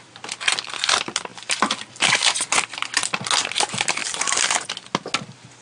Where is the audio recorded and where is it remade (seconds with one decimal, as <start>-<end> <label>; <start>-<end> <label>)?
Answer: 0.0-4.0 recorded; 4.0-4.7 remade; 4.7-5.6 recorded